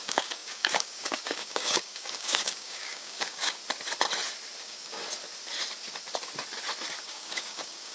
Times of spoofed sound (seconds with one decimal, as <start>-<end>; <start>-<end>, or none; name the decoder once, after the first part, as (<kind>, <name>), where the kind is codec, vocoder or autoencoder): 0.0-3.6 (codec, DAC); 4.6-5.0; 7.0-7.9